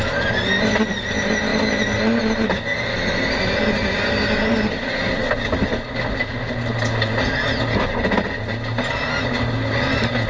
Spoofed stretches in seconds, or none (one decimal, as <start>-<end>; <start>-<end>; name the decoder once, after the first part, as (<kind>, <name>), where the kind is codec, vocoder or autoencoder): none